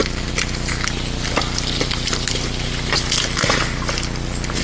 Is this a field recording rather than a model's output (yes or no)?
yes